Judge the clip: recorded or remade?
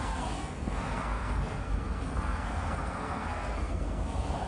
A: remade